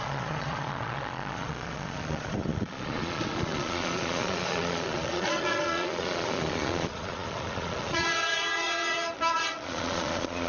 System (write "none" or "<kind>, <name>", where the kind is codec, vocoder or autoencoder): vocoder, Vocos